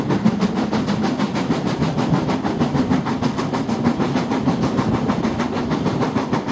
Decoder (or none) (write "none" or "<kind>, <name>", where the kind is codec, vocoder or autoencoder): none